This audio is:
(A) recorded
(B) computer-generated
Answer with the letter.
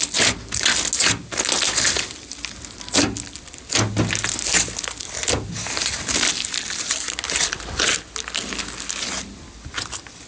A